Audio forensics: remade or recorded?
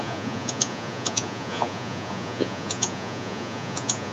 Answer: remade